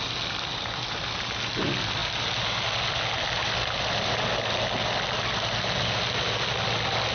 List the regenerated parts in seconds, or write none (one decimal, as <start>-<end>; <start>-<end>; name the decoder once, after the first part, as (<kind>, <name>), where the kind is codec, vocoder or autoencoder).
none